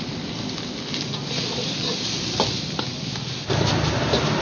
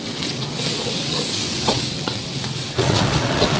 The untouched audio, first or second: first